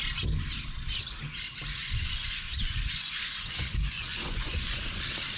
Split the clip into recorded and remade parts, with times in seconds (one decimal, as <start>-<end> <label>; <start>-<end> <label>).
0.0-1.8 recorded; 1.8-5.0 remade; 5.0-5.4 recorded